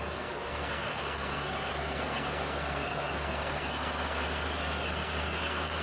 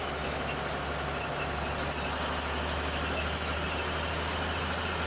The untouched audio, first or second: second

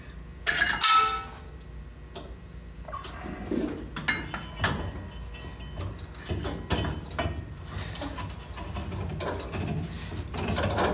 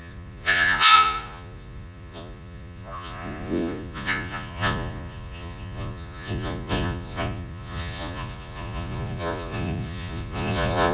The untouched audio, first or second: first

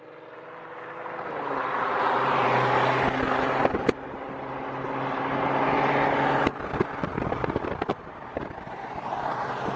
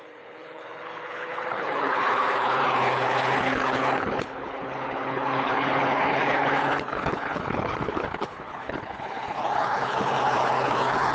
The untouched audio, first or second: first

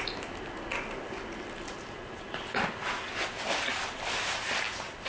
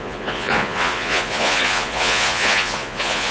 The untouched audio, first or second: first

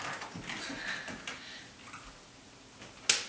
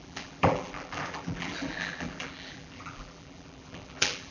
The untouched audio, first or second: first